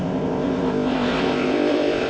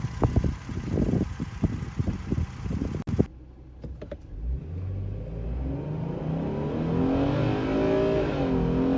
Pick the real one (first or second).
second